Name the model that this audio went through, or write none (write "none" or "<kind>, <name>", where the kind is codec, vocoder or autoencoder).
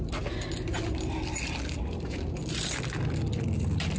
none